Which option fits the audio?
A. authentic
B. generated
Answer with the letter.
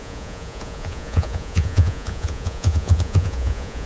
B